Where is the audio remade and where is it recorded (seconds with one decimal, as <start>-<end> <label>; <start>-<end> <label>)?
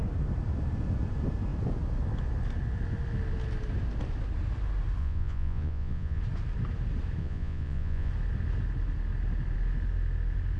0.0-5.0 recorded; 5.0-6.2 remade; 6.2-7.2 recorded; 7.2-8.1 remade; 8.1-10.6 recorded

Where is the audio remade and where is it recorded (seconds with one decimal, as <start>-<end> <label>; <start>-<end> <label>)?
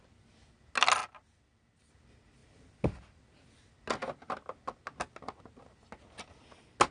0.0-6.9 recorded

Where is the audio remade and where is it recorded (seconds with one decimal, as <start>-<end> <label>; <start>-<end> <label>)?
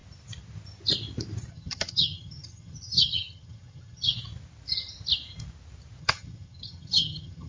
0.0-1.5 recorded; 1.5-4.1 remade; 4.1-6.0 recorded; 6.0-7.5 remade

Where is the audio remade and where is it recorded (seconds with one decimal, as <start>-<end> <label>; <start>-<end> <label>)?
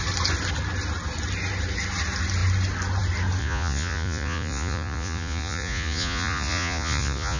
0.0-3.4 recorded; 3.4-7.4 remade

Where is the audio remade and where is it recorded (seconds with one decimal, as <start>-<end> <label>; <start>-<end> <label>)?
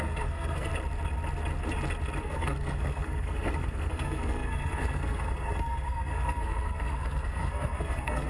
0.0-0.7 remade; 0.7-2.2 recorded; 2.2-8.3 remade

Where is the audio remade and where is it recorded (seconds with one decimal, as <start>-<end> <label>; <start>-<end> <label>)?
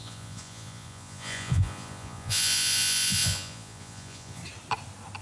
0.0-4.4 remade; 4.4-5.2 recorded